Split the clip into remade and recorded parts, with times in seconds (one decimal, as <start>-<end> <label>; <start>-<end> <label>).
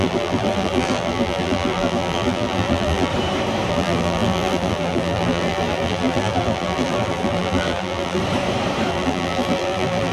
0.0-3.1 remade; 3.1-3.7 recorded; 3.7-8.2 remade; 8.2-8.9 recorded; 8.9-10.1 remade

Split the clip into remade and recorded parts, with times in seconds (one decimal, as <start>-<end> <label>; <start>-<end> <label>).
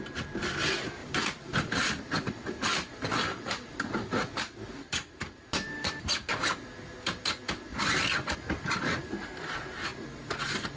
0.0-1.0 recorded; 1.0-5.9 remade; 5.9-7.7 recorded; 7.7-9.1 remade; 9.1-10.8 recorded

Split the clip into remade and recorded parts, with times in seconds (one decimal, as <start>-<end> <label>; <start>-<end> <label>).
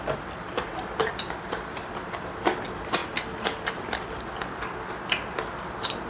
0.0-6.1 recorded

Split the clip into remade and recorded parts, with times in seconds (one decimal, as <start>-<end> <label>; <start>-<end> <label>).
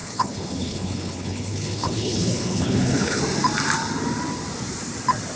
0.0-3.2 remade; 3.2-5.4 recorded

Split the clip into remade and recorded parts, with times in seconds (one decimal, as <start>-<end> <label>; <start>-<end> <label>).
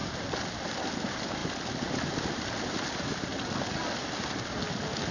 0.0-5.1 recorded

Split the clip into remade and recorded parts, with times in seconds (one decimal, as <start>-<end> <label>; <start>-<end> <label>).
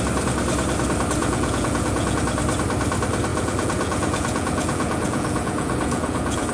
0.0-1.2 recorded; 1.2-2.2 remade; 2.2-3.3 recorded; 3.3-6.5 remade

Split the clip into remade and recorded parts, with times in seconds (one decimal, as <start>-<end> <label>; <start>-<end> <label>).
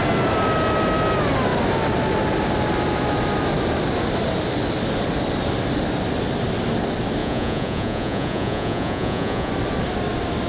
0.0-7.2 recorded; 7.2-9.5 remade; 9.5-10.5 recorded